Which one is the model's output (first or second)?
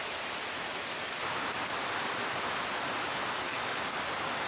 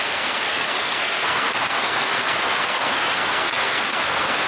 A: second